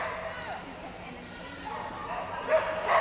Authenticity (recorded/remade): recorded